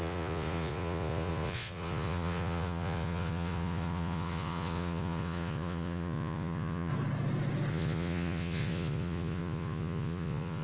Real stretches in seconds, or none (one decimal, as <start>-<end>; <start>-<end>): 6.9-7.7